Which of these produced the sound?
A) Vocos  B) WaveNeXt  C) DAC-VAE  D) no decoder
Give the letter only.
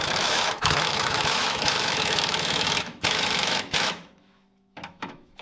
C